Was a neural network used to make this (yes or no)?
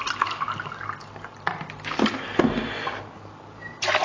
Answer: no